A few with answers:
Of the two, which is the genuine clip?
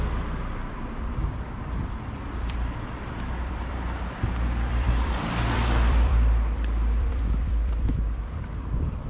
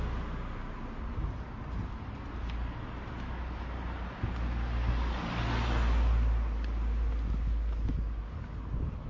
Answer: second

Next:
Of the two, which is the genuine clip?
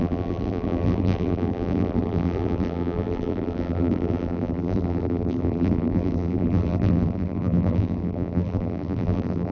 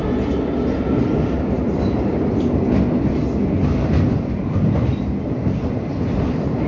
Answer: second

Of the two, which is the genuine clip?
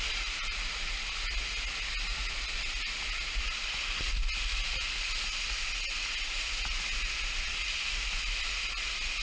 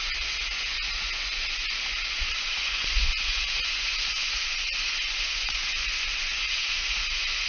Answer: first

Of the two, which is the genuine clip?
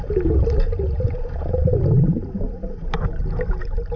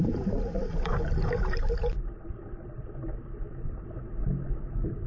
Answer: first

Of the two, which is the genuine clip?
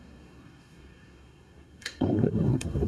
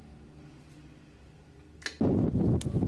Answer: second